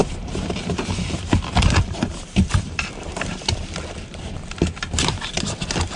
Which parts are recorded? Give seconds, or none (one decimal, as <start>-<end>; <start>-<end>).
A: 3.6-6.0